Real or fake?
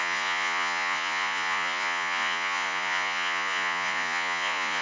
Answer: fake